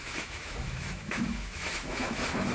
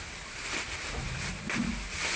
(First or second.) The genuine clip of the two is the second